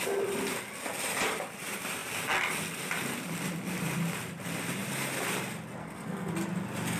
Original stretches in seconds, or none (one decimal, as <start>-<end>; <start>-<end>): 0.0-5.8; 6.3-7.0